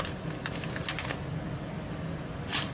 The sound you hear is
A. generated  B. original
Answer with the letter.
B